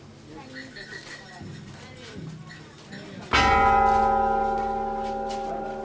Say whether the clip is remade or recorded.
recorded